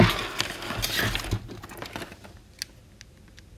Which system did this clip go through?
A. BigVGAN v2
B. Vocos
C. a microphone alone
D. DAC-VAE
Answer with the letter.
C